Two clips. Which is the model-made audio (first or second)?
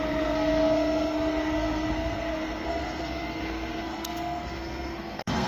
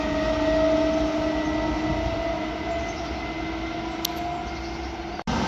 first